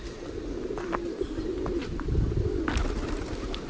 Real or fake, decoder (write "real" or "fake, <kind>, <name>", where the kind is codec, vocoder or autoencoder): real